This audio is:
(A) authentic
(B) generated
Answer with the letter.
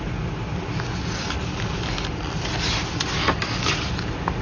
A